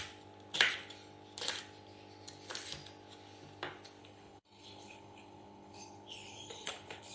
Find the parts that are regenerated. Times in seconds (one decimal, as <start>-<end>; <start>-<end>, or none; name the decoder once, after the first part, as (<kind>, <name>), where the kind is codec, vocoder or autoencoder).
4.0-7.1 (codec, HILCodec)